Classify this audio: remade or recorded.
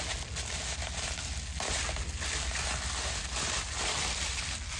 recorded